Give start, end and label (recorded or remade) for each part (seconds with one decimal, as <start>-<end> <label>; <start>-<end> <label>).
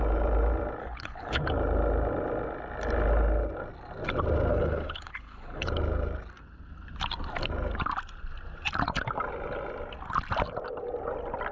0.0-0.8 recorded; 0.8-1.4 remade; 1.4-4.5 recorded; 4.5-5.7 remade; 5.7-11.5 recorded